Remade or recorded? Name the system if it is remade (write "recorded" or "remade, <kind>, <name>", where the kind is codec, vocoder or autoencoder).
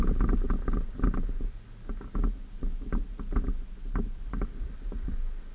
recorded